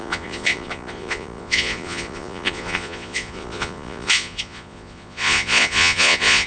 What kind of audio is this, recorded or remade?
remade